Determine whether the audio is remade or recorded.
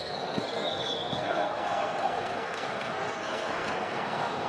remade